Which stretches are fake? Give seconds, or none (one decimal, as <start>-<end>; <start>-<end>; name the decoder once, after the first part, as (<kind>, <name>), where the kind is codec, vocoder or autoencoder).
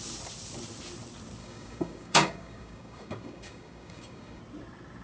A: 1.4-4.4 (codec, DAC)